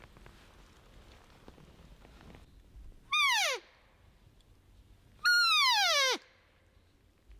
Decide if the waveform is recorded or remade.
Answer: recorded